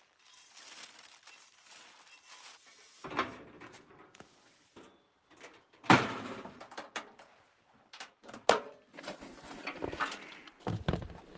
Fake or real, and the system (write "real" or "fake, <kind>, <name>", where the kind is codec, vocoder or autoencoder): real